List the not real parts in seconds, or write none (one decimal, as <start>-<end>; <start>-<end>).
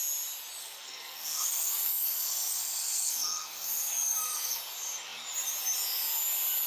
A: 0.6-4.6